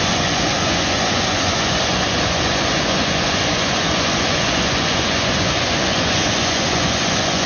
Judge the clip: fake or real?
fake